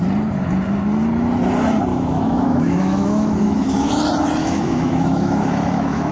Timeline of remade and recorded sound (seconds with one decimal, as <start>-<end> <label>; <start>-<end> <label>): 0.0-1.9 recorded; 1.9-3.9 remade; 3.9-4.4 recorded; 4.4-6.1 remade